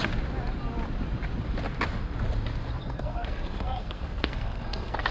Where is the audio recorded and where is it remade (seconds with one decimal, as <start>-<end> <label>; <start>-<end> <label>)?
0.0-2.8 recorded; 2.8-5.1 remade